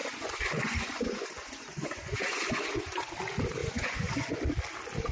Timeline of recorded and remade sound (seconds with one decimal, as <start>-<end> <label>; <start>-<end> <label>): 0.0-3.1 remade; 3.1-3.6 recorded; 3.6-4.4 remade; 4.4-5.1 recorded